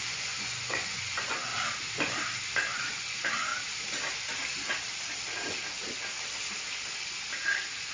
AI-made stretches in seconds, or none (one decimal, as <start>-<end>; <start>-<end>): 0.0-1.5; 2.9-3.5